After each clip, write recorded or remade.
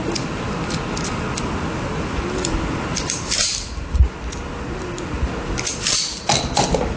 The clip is recorded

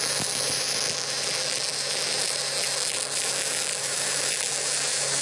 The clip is recorded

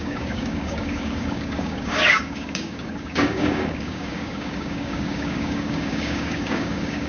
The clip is remade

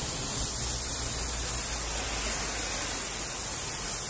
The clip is recorded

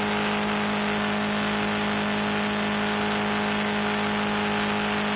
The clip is recorded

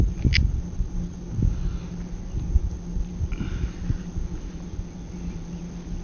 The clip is recorded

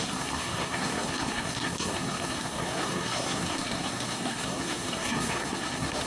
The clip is remade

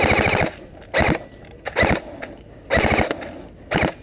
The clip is recorded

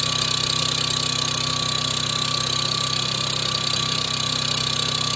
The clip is recorded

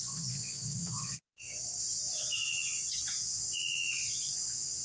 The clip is remade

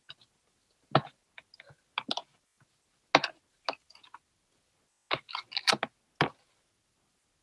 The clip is recorded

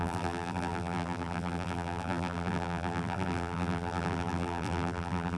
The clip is remade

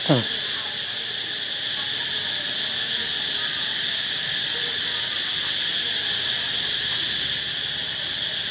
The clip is recorded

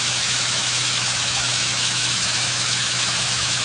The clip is remade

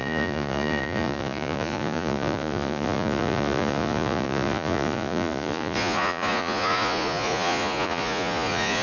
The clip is remade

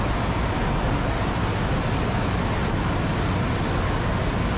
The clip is recorded